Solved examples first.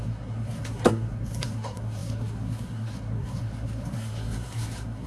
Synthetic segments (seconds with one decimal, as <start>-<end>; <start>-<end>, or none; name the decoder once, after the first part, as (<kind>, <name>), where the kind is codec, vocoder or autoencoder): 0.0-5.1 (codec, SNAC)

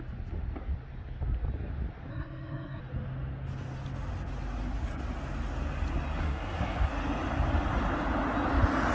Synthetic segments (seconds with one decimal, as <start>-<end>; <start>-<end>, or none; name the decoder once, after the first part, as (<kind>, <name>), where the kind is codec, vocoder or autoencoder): 2.1-2.8 (codec, SNAC); 6.2-6.9

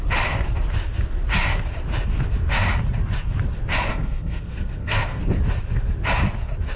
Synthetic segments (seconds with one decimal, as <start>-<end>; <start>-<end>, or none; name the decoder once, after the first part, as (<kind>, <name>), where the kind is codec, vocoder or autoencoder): 3.9-5.2 (codec, SNAC)

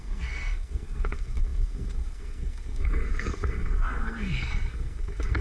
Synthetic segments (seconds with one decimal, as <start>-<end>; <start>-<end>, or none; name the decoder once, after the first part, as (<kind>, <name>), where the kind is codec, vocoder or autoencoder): 0.0-5.4 (codec, SNAC)

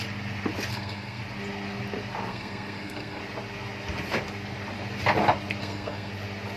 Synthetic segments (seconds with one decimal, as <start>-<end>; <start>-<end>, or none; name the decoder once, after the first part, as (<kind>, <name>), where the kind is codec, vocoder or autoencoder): 0.7-1.2 (codec, SNAC); 2.3-3.2; 5.6-6.1